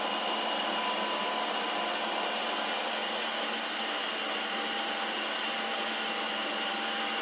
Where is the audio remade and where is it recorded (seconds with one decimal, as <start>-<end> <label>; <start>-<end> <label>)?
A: 0.0-7.2 recorded